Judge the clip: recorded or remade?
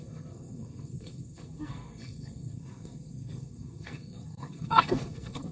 remade